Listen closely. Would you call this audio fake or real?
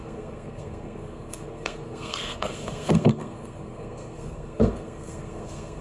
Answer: fake